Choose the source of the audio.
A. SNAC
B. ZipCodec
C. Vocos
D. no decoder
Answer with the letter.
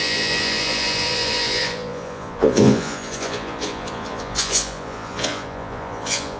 C